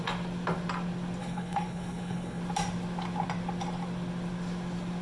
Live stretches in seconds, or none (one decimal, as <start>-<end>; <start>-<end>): 0.0-1.2; 2.4-5.0